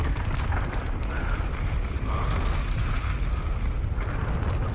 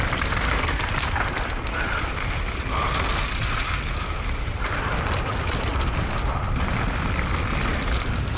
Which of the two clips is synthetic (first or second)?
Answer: second